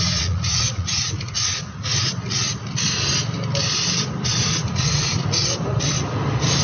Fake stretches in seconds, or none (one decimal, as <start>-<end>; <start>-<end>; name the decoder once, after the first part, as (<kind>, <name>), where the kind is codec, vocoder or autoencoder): 0.0-1.9 (vocoder, Vocos); 4.4-5.1